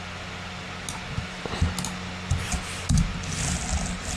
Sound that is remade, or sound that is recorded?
recorded